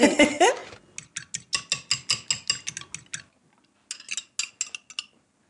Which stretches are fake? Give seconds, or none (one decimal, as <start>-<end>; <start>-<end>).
none